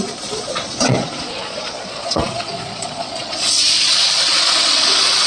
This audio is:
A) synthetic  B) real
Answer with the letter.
A